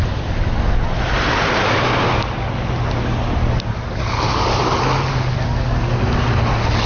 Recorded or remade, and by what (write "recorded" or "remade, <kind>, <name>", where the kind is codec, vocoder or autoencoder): recorded